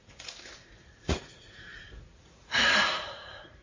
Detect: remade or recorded remade